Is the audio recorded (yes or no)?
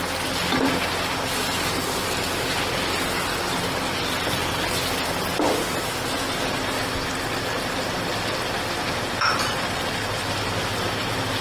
yes